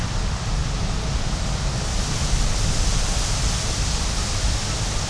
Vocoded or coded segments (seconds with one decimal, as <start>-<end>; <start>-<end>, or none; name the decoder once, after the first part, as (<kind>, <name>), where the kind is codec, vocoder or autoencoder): none